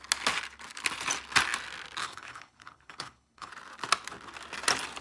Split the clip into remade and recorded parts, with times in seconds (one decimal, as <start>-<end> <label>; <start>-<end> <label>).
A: 0.0-2.0 recorded; 2.0-3.5 remade; 3.5-5.0 recorded